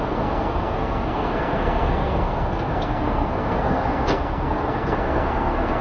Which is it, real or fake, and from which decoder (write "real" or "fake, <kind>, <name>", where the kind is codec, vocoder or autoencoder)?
fake, codec, SNAC